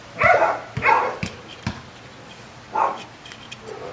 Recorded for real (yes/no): yes